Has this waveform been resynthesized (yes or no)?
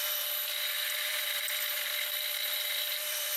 yes